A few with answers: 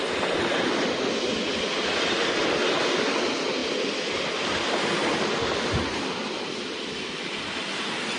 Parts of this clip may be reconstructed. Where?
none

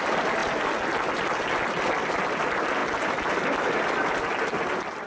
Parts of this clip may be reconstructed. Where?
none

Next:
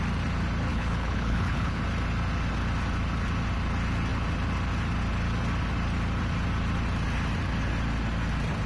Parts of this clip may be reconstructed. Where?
0.7-1.8 (codec, HILCodec)